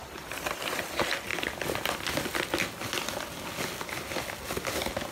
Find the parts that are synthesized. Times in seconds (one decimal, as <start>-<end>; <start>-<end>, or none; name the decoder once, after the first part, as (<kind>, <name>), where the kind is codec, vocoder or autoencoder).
0.0-0.7 (vocoder, BigVGAN v2)